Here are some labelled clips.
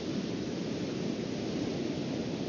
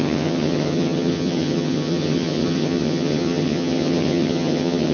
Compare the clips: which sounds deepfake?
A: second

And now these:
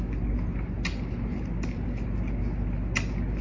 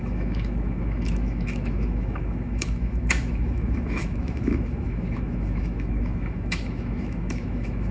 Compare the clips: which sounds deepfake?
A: second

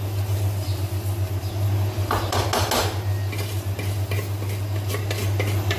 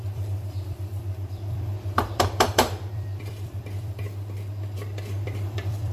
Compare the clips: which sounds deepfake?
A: second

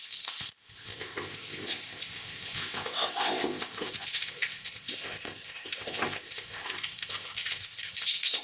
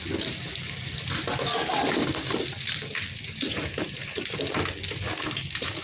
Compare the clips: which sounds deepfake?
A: first